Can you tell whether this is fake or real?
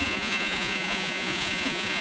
fake